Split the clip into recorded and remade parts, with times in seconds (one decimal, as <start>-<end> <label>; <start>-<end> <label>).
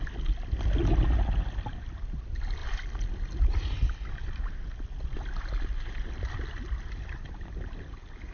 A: 0.0-8.3 recorded